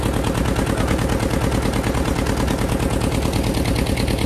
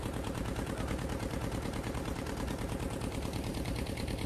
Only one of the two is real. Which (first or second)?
first